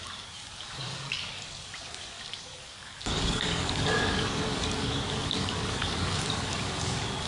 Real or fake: fake